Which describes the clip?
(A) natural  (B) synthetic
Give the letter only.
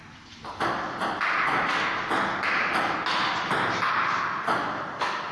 A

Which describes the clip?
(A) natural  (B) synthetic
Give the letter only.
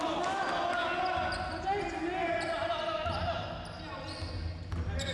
A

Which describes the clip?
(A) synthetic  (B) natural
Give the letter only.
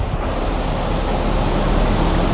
B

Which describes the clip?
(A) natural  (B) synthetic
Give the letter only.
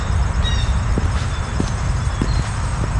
B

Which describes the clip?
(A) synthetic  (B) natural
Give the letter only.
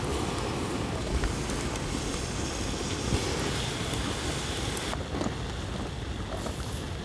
B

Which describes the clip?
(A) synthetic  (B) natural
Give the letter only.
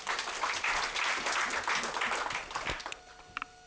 B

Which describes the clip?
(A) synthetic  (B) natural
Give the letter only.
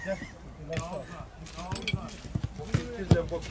B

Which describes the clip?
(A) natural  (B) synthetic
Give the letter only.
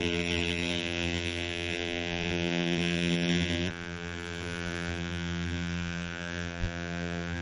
B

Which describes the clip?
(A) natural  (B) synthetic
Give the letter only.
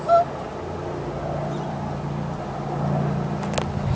A